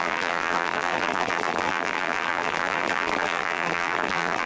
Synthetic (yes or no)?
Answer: yes